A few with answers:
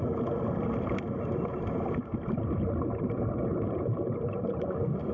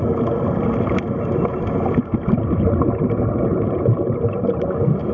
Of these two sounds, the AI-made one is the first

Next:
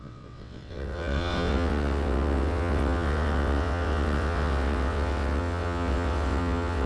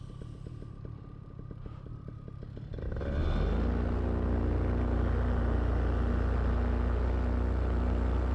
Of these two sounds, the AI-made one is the first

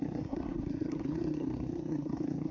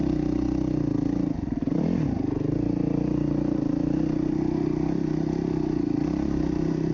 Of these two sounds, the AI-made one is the first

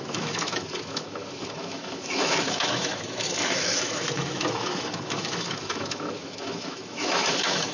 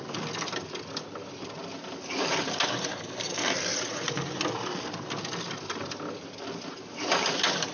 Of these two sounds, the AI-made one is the first